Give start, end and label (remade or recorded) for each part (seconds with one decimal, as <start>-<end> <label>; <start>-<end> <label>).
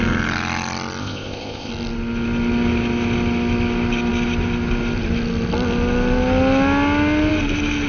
0.0-1.0 recorded; 1.0-1.7 remade; 1.7-7.9 recorded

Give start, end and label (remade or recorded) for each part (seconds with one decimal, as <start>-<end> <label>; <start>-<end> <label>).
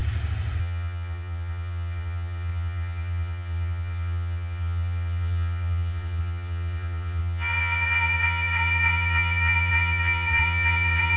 0.0-0.6 recorded; 0.6-11.2 remade